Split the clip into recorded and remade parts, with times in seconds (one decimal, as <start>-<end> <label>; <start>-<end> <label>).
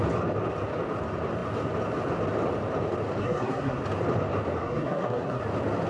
0.0-3.2 recorded; 3.2-3.8 remade; 3.8-4.6 recorded; 4.6-5.4 remade; 5.4-5.9 recorded